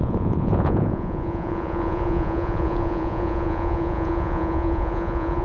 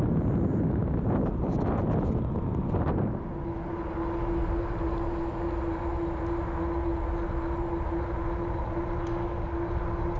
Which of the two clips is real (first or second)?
second